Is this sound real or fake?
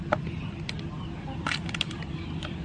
real